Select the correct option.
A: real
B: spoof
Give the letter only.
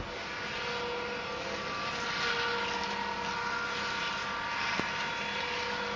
A